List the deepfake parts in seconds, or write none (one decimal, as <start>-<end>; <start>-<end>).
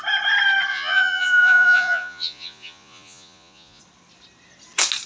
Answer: 0.7-3.8